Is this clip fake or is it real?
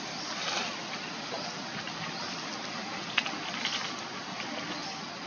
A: real